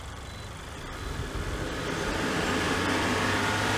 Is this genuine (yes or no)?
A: yes